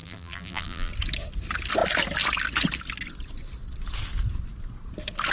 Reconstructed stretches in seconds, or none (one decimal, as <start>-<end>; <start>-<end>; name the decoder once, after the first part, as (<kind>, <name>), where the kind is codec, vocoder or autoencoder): 0.0-0.9 (vocoder, BigVGAN v2)